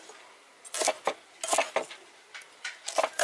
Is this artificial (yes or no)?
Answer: no